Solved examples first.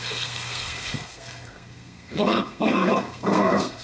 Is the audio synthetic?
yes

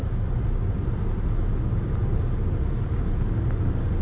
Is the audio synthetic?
no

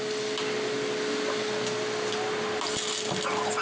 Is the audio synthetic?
no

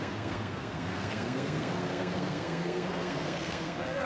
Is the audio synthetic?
yes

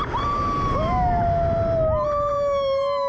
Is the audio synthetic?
no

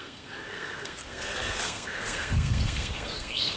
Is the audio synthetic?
yes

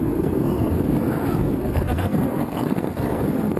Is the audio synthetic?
yes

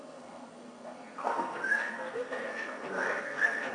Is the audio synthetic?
yes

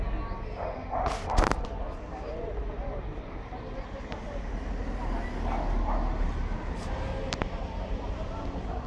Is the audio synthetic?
no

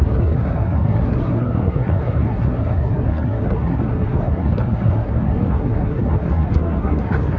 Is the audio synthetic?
yes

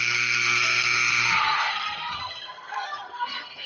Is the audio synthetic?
yes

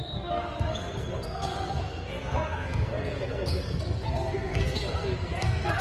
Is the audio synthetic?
yes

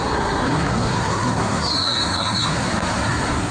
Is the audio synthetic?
yes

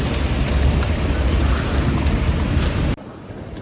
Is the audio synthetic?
no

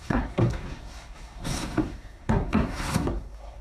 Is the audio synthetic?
yes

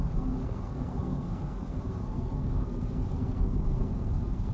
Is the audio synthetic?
yes